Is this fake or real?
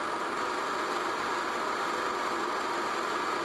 real